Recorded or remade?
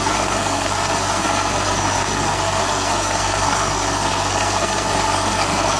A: remade